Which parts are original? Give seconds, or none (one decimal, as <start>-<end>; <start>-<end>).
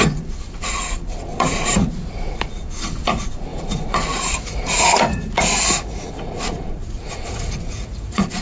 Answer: none